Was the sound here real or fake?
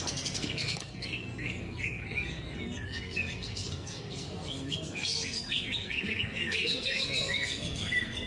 fake